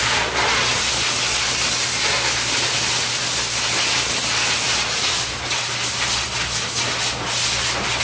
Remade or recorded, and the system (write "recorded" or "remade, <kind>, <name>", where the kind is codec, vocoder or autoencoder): recorded